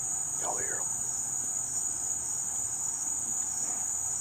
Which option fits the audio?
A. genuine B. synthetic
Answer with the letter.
B